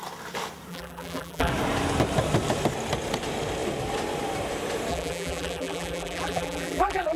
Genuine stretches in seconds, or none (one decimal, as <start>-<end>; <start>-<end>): 0.0-0.7; 1.5-4.9

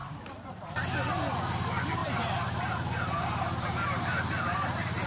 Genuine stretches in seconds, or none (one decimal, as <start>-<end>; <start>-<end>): 0.5-2.0

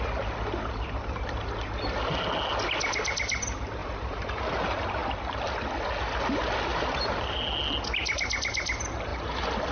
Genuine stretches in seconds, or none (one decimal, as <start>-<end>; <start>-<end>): 0.0-3.8; 4.4-6.7; 7.4-9.1

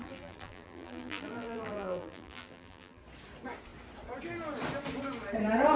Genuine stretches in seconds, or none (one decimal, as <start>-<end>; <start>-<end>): 3.0-5.8

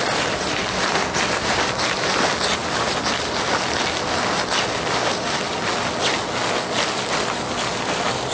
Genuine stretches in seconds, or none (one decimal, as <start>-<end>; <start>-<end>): 0.0-8.3